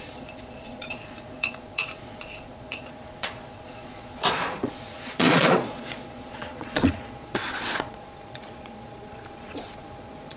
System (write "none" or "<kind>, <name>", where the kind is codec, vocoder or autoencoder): vocoder, Vocos